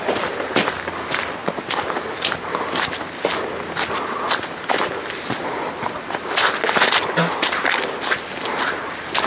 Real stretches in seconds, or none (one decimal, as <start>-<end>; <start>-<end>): 0.0-9.3